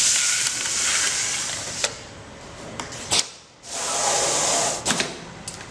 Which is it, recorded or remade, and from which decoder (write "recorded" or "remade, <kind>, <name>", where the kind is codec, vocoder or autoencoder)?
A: recorded